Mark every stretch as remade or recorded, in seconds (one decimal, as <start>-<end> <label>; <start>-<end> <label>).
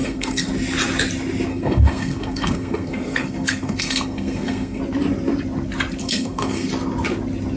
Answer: 0.0-0.5 remade; 0.5-1.5 recorded; 1.5-4.8 remade; 4.8-6.0 recorded; 6.0-6.7 remade; 6.7-7.6 recorded